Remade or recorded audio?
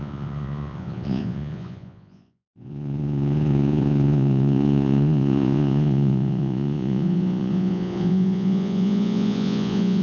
remade